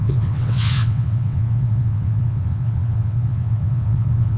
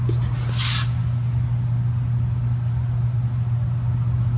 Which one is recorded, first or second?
second